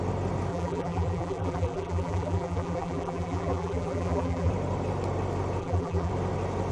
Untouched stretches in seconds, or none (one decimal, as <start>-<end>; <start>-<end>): 0.0-0.5; 4.5-5.6; 6.1-6.7